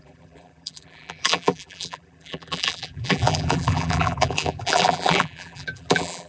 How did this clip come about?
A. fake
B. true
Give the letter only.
A